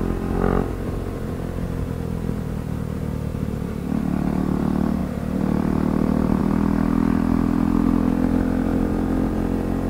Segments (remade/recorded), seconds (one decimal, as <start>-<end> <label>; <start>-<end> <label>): 0.0-5.0 recorded; 5.0-6.4 remade; 6.4-9.9 recorded